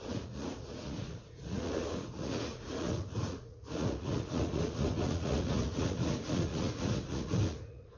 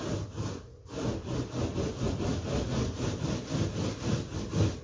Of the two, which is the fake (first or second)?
first